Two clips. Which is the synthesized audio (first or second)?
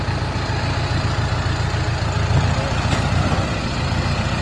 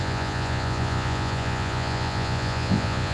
second